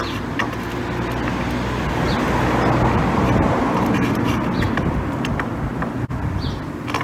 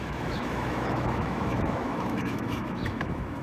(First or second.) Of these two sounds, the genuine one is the first